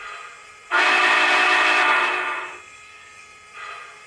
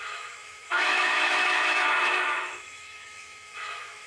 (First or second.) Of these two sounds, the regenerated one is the second